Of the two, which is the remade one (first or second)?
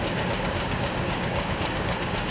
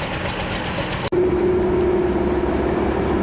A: first